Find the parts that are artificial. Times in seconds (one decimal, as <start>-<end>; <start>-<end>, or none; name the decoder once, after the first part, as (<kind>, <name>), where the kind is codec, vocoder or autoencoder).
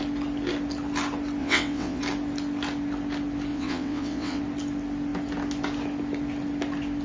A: 1.4-2.0 (vocoder, WaveNeXt); 3.5-4.4